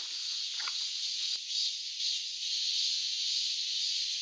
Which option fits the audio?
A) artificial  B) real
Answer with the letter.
A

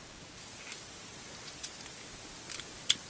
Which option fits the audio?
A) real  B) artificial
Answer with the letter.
A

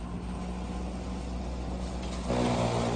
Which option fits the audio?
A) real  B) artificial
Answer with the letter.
A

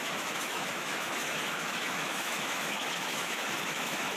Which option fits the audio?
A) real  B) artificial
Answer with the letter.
B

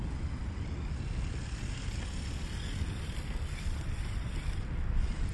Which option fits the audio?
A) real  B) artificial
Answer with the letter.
A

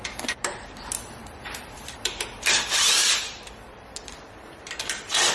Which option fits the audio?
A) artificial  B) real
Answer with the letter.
A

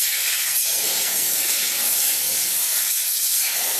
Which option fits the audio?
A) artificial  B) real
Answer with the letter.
A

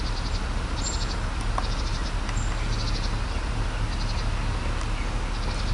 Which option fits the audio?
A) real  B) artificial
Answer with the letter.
A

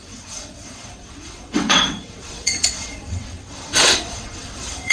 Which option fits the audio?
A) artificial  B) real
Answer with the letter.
A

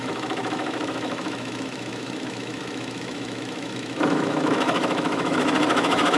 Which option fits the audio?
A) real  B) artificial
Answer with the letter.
B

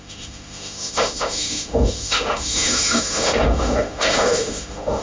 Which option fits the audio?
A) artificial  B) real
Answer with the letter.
A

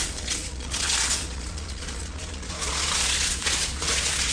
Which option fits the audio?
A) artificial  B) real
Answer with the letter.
A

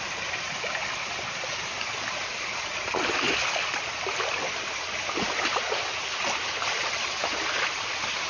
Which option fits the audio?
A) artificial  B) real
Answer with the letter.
B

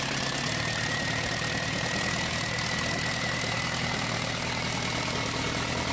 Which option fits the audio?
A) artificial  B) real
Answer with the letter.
B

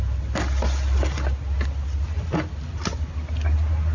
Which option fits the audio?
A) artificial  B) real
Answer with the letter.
B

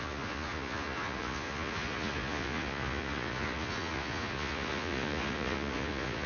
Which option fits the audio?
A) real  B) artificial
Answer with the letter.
B